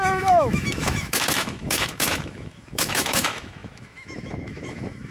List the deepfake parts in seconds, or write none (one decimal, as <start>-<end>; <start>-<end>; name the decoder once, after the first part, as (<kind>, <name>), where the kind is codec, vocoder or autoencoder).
0.0-5.1 (autoencoder, DAC-VAE)